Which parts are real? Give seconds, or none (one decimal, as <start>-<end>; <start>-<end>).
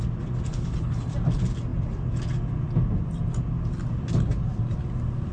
0.0-0.5; 1.1-5.3